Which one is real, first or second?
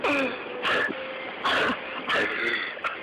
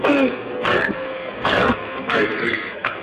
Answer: first